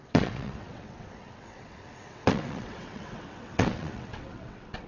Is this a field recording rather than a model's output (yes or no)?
no